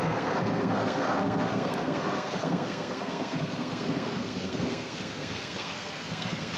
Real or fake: fake